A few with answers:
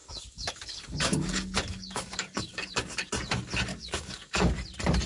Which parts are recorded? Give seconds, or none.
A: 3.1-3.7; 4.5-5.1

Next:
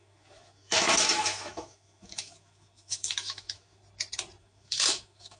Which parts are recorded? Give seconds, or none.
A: 3.8-4.4

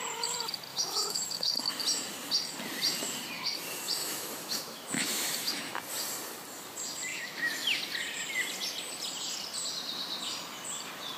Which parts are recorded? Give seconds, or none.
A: 0.0-0.7; 1.5-4.0; 5.8-7.1; 7.8-11.2

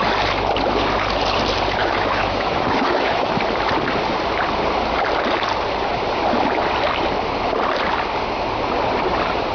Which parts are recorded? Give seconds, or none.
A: 0.0-1.8; 3.4-9.5

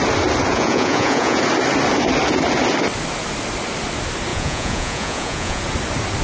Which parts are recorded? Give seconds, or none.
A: 0.0-0.5; 1.4-4.3; 5.6-6.2

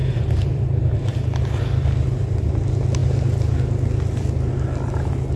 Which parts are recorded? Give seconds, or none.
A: 0.8-5.4